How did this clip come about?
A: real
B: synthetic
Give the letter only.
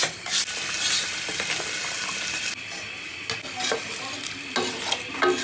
A